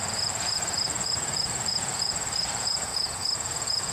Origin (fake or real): fake